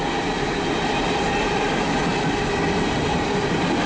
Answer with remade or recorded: recorded